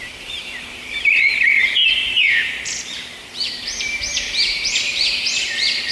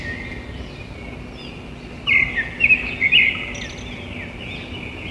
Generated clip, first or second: first